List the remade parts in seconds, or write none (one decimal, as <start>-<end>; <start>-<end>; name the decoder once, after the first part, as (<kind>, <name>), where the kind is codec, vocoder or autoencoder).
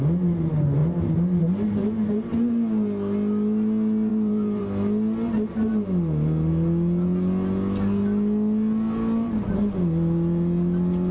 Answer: 4.1-4.6 (vocoder, BigVGAN v2)